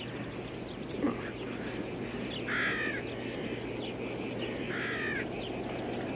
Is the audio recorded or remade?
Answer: recorded